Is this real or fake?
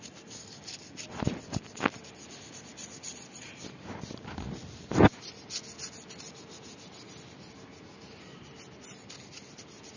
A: real